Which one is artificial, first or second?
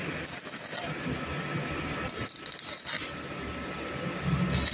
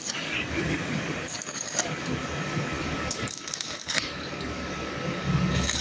second